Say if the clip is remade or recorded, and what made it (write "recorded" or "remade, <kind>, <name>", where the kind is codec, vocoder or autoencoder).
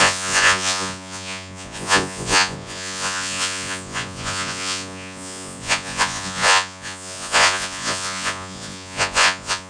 remade, vocoder, Vocos